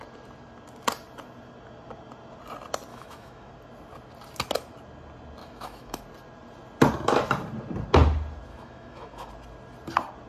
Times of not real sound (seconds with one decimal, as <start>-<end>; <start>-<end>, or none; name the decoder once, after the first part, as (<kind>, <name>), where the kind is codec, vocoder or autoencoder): 2.9-3.5 (autoencoder, DAC-VAE); 5.4-6.0; 8.5-9.3